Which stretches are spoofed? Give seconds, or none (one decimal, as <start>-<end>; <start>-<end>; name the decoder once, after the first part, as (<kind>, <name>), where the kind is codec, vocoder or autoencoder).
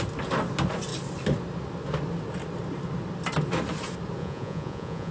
4.2-5.1 (vocoder, Vocos)